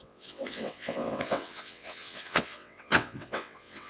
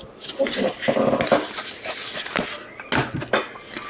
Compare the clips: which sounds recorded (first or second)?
second